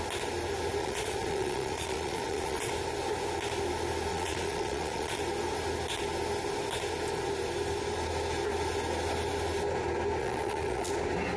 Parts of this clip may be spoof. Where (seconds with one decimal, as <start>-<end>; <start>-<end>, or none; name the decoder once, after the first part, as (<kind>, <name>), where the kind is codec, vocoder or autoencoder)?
0.8-2.7 (vocoder, Vocos); 4.1-5.2; 10.2-10.9